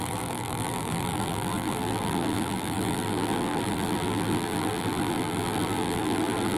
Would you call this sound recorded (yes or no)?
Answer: no